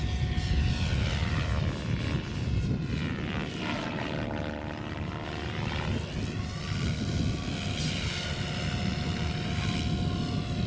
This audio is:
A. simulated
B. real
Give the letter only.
B